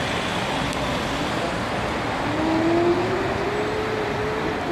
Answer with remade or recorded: recorded